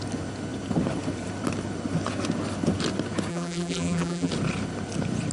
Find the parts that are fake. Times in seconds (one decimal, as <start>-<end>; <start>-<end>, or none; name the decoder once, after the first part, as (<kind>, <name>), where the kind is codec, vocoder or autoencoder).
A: 3.3-4.3 (vocoder, BigVGAN v2)